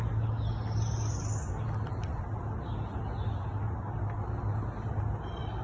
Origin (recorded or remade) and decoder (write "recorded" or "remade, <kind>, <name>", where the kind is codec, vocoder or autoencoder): recorded